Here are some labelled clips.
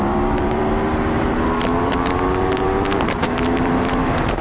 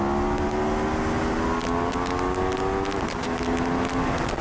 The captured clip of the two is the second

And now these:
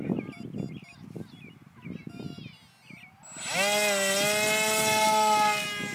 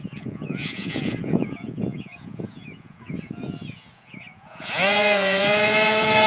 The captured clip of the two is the first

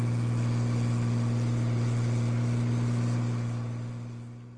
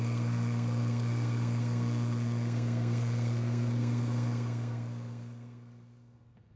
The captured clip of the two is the first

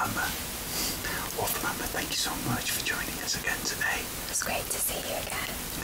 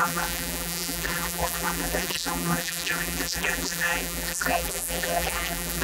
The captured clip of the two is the first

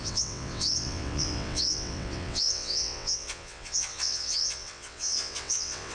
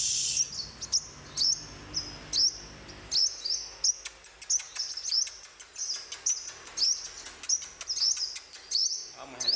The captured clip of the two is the second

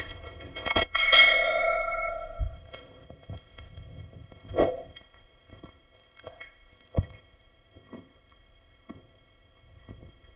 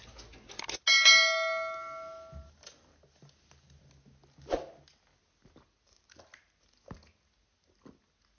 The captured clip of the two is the second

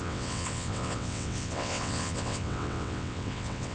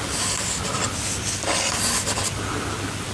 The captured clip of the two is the second